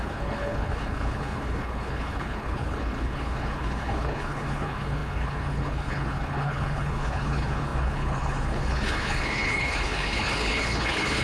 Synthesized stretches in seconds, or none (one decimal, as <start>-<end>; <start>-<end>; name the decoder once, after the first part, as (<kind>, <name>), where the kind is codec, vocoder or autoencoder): 0.0-11.2 (codec, HILCodec)